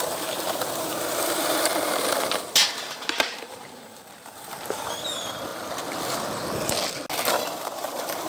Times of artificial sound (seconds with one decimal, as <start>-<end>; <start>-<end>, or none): 0.0-5.5; 7.3-8.3